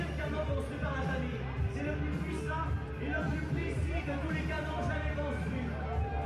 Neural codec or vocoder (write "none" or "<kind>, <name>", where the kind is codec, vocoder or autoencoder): none